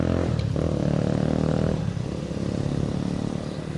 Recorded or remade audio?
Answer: recorded